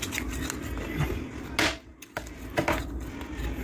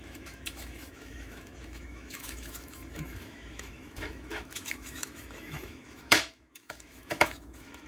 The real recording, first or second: first